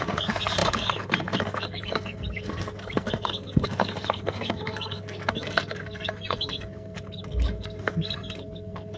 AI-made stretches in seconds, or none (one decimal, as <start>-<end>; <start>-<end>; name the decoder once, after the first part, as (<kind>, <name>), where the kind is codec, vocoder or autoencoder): 0.0-9.0 (codec, SNAC)